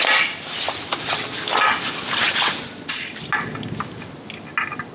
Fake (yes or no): no